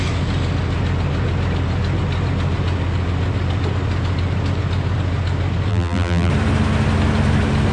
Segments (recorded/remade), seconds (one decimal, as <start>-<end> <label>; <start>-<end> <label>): 0.0-5.7 recorded; 5.7-6.3 remade; 6.3-7.7 recorded